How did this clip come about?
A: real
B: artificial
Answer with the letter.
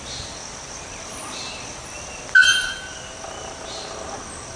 A